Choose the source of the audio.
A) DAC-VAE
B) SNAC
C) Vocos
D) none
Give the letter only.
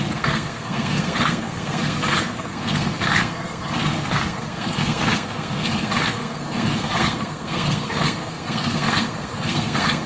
B